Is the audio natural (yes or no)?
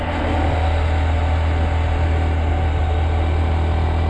yes